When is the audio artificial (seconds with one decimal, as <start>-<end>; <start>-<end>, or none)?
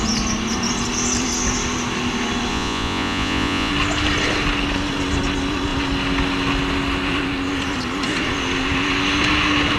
2.5-3.7